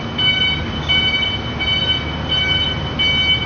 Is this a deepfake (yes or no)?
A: no